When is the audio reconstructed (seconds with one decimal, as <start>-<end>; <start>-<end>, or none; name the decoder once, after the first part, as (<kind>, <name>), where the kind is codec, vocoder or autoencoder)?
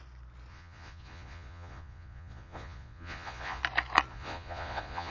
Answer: 0.5-3.6 (vocoder, Vocos); 4.1-5.1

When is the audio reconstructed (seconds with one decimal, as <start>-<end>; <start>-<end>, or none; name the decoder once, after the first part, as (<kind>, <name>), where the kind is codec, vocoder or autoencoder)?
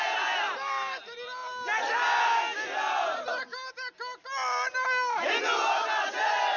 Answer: none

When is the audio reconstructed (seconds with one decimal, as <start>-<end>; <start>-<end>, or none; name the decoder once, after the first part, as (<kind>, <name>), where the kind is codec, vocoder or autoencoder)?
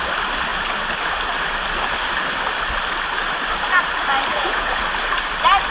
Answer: 4.3-4.8 (vocoder, Vocos)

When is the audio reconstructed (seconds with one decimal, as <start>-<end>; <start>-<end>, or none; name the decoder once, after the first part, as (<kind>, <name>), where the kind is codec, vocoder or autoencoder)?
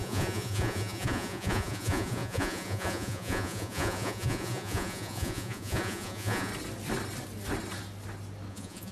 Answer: 0.0-6.5 (vocoder, Vocos); 8.5-8.9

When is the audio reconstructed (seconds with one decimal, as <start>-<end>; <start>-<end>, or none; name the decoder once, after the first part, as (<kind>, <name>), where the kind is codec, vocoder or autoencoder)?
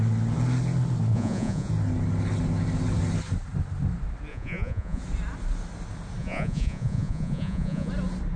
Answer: 1.1-1.7 (vocoder, Vocos); 4.3-5.0; 6.2-7.9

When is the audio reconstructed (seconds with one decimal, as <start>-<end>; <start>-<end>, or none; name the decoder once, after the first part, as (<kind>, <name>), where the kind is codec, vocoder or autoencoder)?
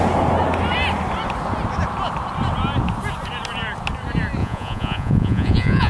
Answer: 4.4-5.9 (vocoder, Vocos)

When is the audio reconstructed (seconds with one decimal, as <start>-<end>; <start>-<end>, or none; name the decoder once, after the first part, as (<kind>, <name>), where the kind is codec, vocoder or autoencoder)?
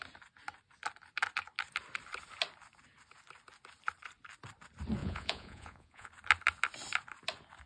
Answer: 5.0-6.1 (vocoder, Vocos)